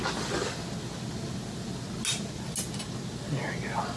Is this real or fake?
real